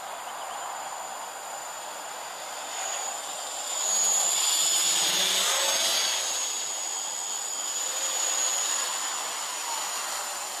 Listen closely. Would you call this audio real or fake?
real